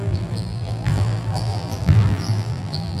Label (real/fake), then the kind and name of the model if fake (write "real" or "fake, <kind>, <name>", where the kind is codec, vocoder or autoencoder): fake, vocoder, BigVGAN v2